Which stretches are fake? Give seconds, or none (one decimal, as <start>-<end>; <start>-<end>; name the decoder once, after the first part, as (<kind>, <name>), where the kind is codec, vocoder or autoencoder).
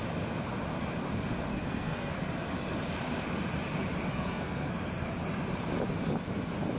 1.5-2.1 (codec, SNAC); 4.1-4.9